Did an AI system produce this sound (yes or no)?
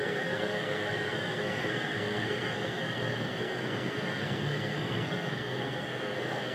yes